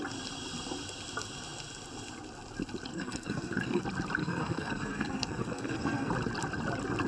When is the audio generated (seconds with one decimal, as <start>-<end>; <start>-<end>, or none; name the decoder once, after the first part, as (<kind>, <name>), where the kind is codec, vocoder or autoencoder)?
2.9-3.8 (codec, SNAC); 4.2-6.1